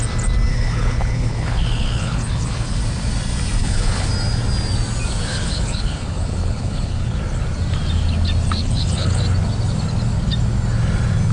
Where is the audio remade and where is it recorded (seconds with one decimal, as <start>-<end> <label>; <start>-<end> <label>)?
0.0-0.5 recorded; 0.5-2.8 remade; 2.8-3.6 recorded; 3.6-4.1 remade; 4.1-5.3 recorded; 5.3-7.2 remade; 7.2-8.6 recorded; 8.6-9.2 remade; 9.2-11.3 recorded